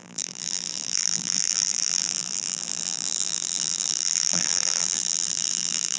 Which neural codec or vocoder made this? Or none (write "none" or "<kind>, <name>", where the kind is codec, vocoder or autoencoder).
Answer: vocoder, BigVGAN v2